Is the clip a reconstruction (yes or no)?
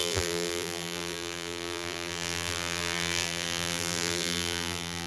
yes